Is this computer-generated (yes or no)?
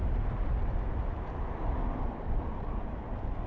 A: no